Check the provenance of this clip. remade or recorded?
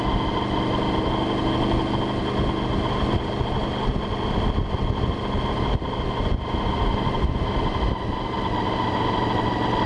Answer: recorded